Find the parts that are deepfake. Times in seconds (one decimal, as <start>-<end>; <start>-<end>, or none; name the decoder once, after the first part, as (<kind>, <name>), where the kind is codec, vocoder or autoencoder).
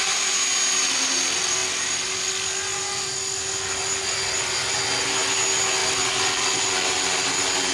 none